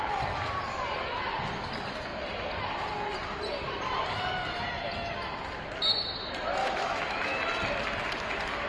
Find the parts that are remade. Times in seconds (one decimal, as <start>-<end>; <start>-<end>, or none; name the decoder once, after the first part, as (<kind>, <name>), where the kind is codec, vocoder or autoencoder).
6.6-7.4 (autoencoder, DAC-VAE)